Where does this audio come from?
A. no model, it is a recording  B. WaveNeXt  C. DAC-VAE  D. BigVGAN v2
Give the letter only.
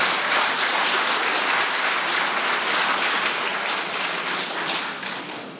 A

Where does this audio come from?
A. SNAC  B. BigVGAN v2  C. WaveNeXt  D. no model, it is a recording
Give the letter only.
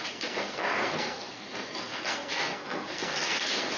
A